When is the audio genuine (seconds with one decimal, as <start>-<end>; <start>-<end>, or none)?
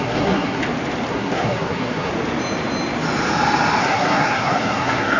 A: 0.6-1.1; 2.1-3.8